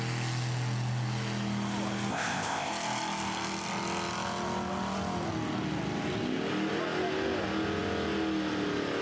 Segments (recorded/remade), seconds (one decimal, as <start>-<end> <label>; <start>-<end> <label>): 0.0-2.1 recorded; 2.1-2.7 remade; 2.7-9.0 recorded